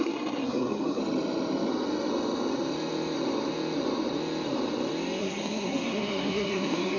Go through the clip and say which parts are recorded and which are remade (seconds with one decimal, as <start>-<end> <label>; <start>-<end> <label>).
0.0-1.0 remade; 1.0-5.2 recorded; 5.2-7.0 remade